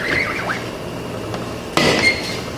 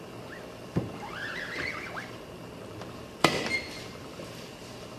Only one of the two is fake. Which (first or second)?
second